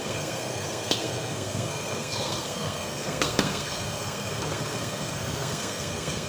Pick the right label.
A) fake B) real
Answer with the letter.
A